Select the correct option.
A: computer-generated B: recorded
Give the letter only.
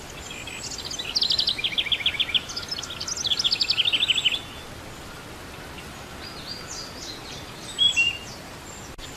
B